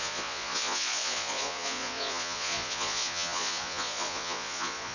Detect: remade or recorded remade